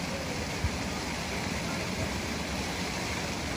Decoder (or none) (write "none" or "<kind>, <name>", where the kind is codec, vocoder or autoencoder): vocoder, BigVGAN v2